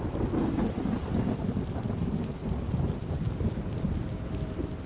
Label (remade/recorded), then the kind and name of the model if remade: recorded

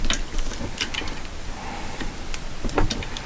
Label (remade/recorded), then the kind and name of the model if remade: recorded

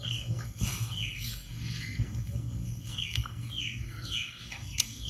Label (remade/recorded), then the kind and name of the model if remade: remade, codec, SNAC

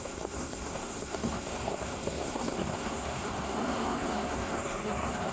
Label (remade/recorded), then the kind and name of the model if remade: remade, codec, SNAC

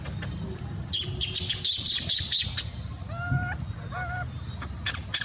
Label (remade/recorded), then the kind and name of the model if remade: recorded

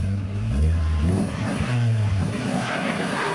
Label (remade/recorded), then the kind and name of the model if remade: remade, codec, SNAC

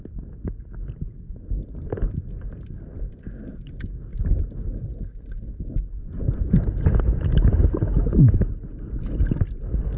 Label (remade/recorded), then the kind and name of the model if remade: recorded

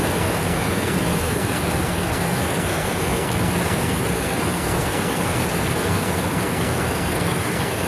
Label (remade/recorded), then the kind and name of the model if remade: remade, codec, SNAC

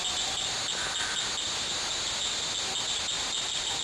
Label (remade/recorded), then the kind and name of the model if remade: recorded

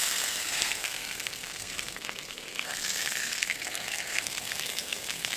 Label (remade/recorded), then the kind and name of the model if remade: remade, codec, SNAC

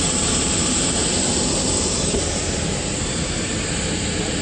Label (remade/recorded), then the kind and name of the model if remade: recorded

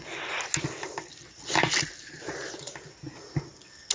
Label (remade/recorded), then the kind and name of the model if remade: recorded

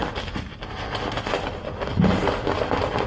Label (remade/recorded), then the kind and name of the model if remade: recorded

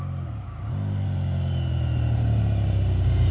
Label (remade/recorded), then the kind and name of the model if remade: recorded